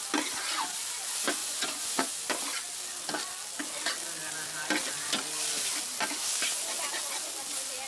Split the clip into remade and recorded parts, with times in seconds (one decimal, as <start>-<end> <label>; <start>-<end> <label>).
0.0-1.4 recorded; 1.4-2.1 remade; 2.1-7.9 recorded